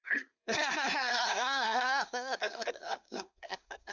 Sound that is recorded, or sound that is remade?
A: remade